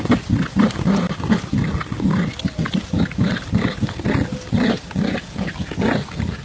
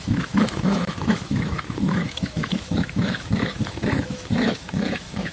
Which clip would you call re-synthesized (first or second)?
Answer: second